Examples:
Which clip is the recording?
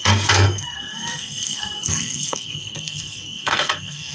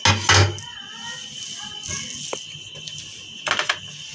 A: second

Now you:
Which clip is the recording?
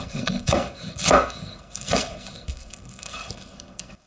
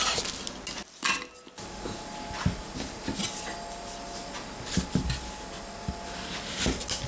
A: second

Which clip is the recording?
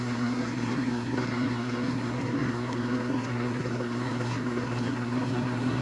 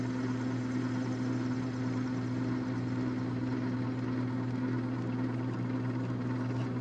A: second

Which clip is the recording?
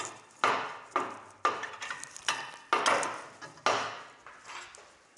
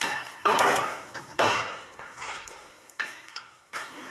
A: first